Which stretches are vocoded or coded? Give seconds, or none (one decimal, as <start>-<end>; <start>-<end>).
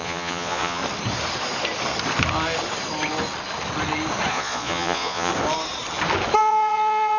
0.0-0.8; 4.3-5.3; 6.4-7.2